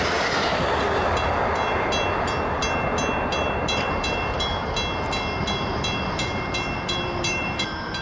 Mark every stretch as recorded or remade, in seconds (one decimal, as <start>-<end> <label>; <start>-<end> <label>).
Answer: 0.0-1.4 remade; 1.4-3.3 recorded; 3.3-4.5 remade; 4.5-5.4 recorded; 5.4-8.0 remade